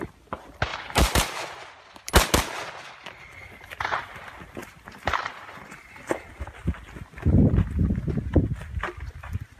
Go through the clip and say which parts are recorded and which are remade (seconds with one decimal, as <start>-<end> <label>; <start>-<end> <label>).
0.0-0.7 recorded; 0.7-1.7 remade; 1.7-4.6 recorded; 4.6-5.6 remade; 5.6-9.6 recorded